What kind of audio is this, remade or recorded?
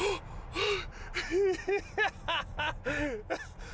recorded